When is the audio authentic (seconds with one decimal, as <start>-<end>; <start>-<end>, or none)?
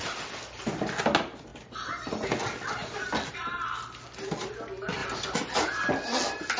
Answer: 0.0-6.6